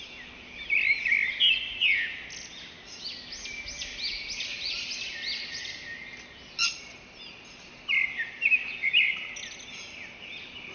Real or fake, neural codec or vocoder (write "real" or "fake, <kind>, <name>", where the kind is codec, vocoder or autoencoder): real